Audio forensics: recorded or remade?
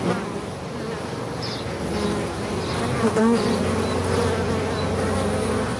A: recorded